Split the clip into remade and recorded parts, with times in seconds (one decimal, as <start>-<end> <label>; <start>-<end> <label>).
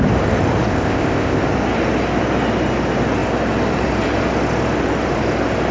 0.0-0.7 recorded; 0.7-1.4 remade; 1.4-5.7 recorded